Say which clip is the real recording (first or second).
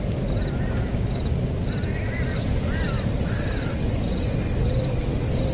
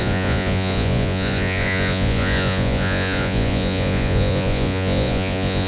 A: first